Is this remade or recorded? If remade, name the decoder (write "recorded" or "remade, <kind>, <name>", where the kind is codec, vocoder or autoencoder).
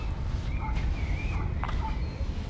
recorded